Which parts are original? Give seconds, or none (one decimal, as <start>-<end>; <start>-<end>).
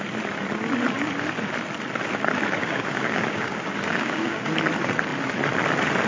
0.0-2.6; 4.5-6.1